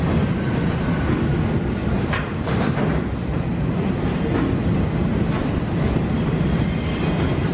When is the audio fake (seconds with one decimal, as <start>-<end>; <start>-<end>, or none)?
1.8-4.2; 5.0-7.5